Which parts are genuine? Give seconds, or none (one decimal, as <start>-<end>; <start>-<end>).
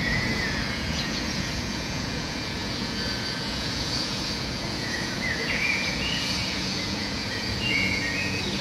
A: none